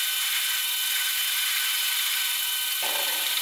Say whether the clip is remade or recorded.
remade